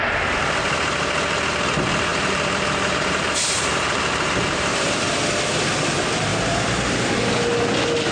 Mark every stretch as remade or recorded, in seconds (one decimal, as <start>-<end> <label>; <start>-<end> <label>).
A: 0.0-2.1 recorded; 2.1-5.0 remade; 5.0-6.3 recorded; 6.3-7.1 remade; 7.1-8.1 recorded